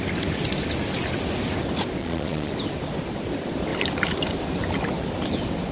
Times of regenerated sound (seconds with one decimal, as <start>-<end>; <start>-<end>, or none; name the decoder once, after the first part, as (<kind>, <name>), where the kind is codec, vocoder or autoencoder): 2.0-2.5 (vocoder, Vocos)